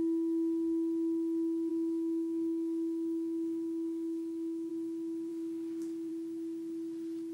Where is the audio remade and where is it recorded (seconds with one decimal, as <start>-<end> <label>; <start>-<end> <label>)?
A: 0.0-1.7 recorded; 1.7-4.7 remade; 4.7-5.3 recorded; 5.3-6.1 remade; 6.1-7.3 recorded